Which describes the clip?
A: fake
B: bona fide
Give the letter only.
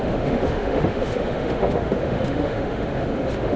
A